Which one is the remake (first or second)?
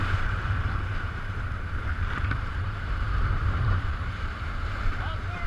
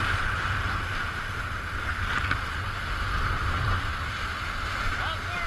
first